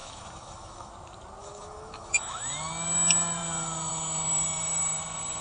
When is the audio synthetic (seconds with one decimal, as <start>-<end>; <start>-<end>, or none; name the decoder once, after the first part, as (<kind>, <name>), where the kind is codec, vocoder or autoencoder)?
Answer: 0.0-0.9 (autoencoder, DAC-VAE); 1.4-2.4